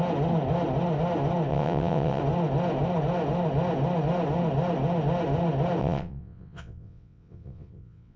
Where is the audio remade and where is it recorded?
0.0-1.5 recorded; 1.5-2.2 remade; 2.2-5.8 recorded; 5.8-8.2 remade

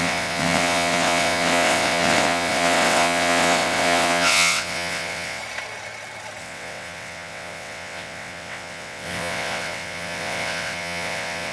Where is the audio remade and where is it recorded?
0.0-5.4 remade; 5.4-6.4 recorded; 6.4-11.5 remade